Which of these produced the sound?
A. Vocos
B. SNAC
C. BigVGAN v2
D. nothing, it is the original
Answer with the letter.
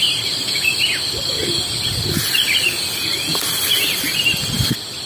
D